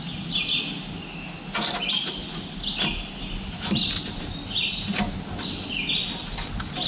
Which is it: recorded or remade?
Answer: recorded